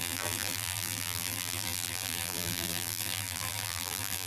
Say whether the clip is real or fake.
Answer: fake